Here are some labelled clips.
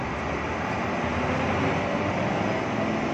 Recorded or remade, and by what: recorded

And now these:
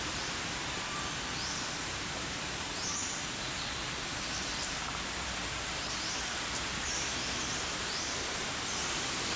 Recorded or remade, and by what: remade, vocoder, BigVGAN v2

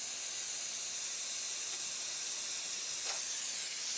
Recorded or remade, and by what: recorded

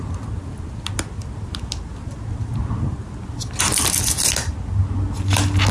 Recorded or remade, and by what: recorded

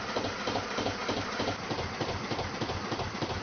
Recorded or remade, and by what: remade, vocoder, BigVGAN v2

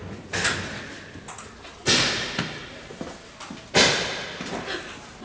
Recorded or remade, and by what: recorded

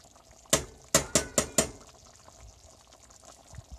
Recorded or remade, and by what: recorded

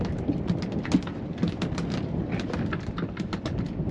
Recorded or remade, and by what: recorded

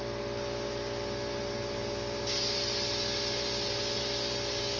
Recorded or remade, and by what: recorded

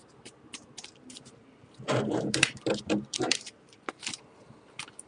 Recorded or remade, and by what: remade, vocoder, BigVGAN v2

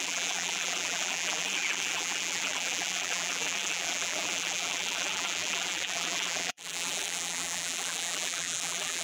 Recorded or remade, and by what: remade, vocoder, BigVGAN v2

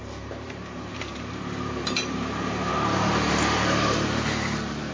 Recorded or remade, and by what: remade, vocoder, BigVGAN v2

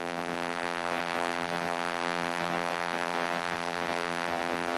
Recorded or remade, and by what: remade, vocoder, BigVGAN v2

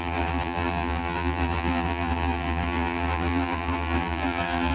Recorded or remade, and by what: remade, vocoder, BigVGAN v2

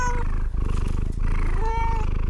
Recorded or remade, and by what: recorded